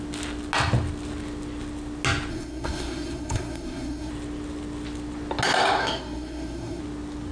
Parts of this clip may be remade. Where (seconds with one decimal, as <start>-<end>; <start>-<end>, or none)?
2.3-4.1; 5.8-6.8